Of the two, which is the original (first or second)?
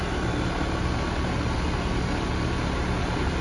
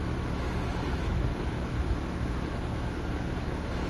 first